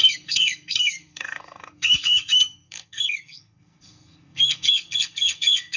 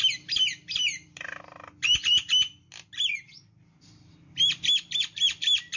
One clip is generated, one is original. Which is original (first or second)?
second